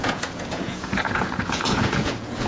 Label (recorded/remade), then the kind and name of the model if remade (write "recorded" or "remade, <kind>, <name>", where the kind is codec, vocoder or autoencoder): remade, vocoder, Vocos